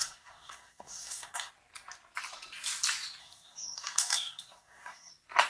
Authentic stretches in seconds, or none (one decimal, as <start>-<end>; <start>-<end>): 1.5-3.2; 5.1-5.5